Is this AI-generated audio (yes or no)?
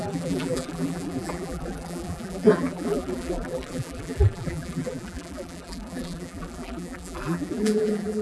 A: yes